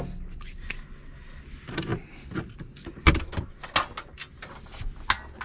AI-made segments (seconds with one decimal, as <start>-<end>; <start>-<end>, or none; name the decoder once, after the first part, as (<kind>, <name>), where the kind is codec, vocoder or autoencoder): none